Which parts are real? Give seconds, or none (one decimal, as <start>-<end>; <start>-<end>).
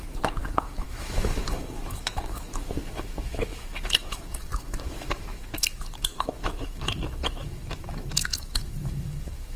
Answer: none